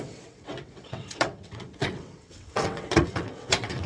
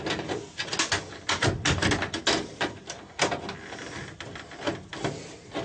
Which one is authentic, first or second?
second